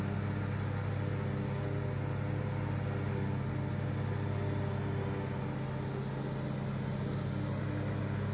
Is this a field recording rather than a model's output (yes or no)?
yes